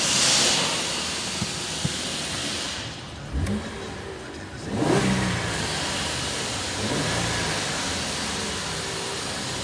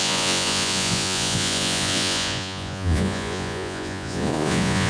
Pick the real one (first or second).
first